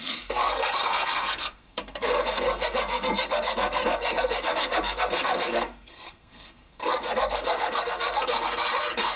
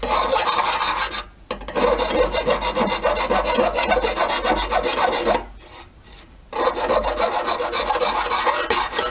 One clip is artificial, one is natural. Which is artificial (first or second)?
first